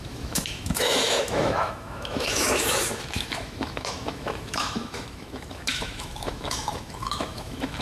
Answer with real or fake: fake